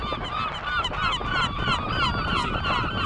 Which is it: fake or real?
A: real